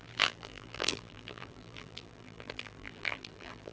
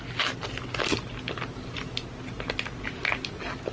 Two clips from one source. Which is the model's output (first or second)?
first